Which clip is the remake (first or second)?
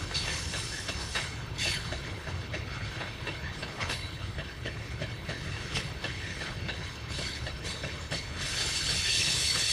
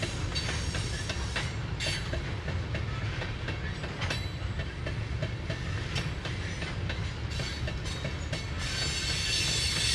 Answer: first